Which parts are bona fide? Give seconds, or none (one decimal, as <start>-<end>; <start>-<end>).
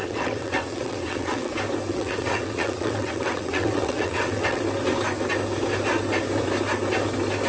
1.5-1.9; 4.6-7.5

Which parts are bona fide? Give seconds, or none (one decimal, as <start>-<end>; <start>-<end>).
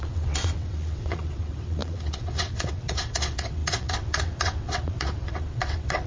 none